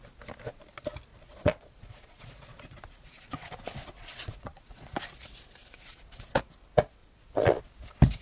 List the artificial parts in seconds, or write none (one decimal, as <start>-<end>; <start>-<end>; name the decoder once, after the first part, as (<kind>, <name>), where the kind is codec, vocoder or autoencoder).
1.1-5.0 (vocoder, Vocos); 5.6-6.4; 7.0-7.6